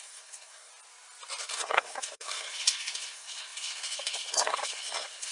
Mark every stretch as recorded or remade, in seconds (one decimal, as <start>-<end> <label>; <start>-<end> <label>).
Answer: 0.0-0.7 remade; 0.7-1.4 recorded; 1.4-5.3 remade

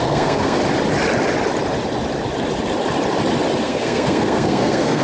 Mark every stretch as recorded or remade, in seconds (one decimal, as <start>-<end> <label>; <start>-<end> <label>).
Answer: 0.0-0.6 remade; 0.6-3.6 recorded; 3.6-5.0 remade